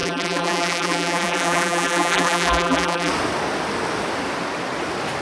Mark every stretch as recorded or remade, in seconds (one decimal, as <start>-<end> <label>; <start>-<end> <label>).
0.0-3.1 remade; 3.1-5.2 recorded